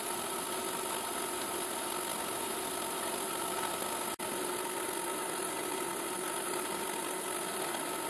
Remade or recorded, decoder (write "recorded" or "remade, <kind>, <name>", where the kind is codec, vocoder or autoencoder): recorded